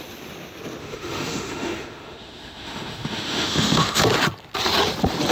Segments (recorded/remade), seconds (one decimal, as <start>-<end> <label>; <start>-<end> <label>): 0.0-0.8 recorded; 0.8-4.0 remade; 4.0-5.3 recorded